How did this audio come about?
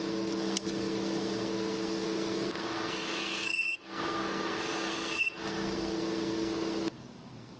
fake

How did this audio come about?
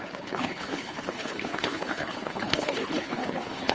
fake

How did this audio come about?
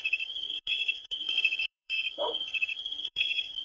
fake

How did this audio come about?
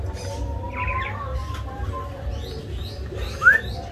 real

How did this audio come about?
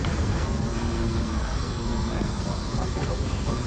fake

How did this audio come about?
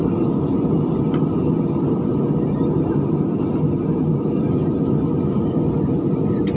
real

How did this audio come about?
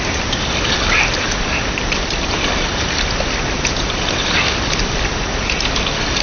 real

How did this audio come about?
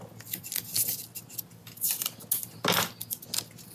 real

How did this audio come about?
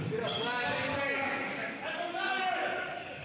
fake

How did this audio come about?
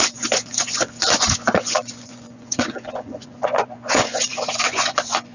fake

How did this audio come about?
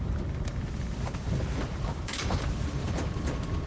fake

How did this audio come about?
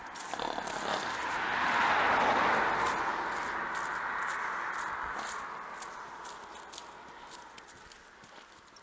real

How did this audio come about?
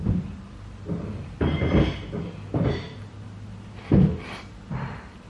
fake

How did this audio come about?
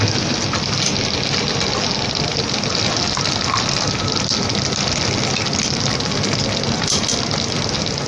real